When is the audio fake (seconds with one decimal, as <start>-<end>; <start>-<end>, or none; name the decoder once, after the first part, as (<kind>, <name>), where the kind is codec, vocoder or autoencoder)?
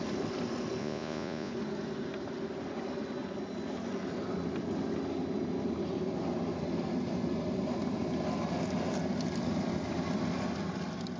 0.8-1.5 (vocoder, Vocos)